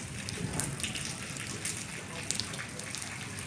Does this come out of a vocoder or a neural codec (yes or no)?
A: no